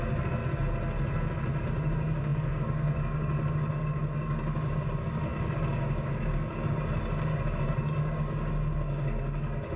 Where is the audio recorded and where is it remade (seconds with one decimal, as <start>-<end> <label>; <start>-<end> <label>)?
0.0-0.4 remade; 0.4-1.6 recorded; 1.6-9.8 remade